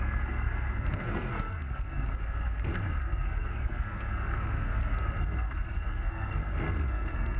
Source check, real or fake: fake